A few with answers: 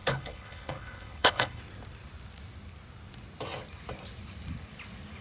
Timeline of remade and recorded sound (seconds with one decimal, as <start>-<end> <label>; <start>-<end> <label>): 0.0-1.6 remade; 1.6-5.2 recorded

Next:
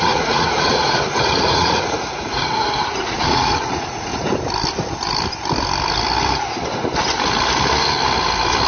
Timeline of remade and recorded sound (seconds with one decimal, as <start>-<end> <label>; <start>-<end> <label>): 0.0-4.1 remade; 4.1-8.7 recorded

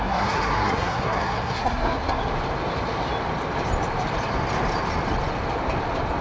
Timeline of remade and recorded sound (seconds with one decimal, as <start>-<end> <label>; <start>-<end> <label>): 0.0-2.2 remade; 2.2-6.2 recorded